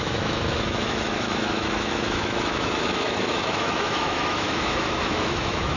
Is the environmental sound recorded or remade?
remade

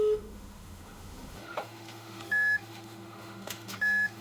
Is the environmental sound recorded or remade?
remade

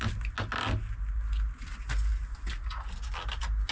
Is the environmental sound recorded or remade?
recorded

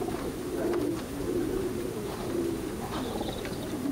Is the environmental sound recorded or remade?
remade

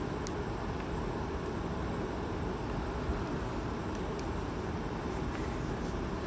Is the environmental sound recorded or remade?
recorded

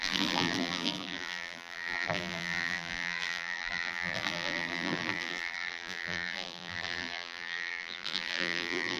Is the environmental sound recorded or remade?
remade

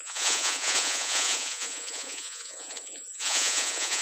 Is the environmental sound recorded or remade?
remade